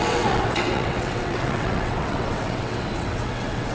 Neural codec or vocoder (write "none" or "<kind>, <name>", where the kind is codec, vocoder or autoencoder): vocoder, WaveNeXt